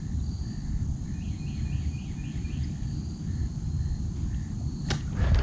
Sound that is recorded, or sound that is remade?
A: recorded